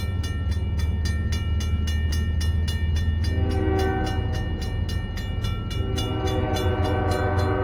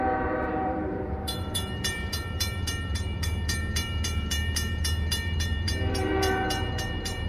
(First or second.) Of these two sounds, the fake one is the second